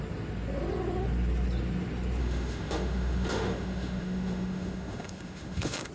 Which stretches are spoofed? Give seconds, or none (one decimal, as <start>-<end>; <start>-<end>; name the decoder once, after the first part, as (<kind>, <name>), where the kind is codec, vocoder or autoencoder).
2.2-5.9 (autoencoder, DAC-VAE)